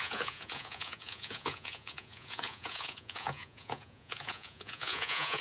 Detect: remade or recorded remade